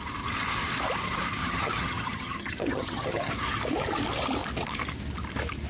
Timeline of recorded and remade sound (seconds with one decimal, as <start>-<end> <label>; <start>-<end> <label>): 0.0-1.4 recorded; 1.4-3.3 remade; 3.3-5.7 recorded